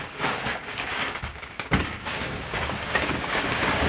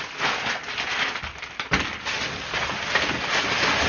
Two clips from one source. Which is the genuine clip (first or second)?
second